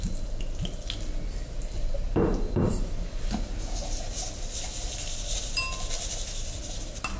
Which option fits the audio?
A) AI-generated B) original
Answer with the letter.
B